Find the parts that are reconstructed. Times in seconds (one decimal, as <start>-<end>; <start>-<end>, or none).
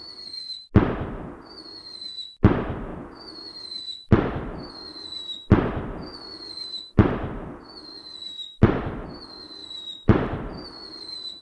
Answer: 2.9-4.7; 9.6-11.4